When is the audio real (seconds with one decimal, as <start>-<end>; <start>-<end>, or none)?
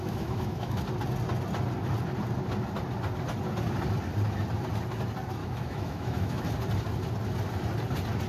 0.8-5.4; 6.4-8.3